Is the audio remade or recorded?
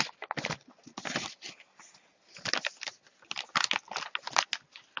recorded